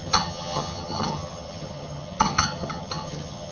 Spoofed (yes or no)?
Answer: yes